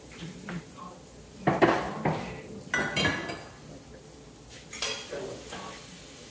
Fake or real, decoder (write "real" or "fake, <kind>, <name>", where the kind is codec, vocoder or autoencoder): real